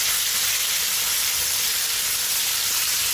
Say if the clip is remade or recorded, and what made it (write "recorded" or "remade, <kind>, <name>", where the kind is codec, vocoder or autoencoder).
recorded